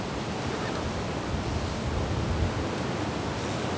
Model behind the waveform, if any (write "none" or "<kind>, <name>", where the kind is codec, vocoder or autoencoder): none